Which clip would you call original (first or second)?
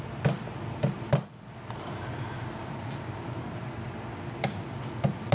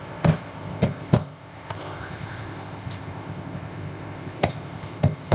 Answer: first